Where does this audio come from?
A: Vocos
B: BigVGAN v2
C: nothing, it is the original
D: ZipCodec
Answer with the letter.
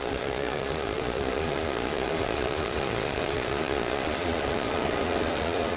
A